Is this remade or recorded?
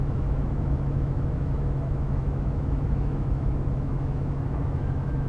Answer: remade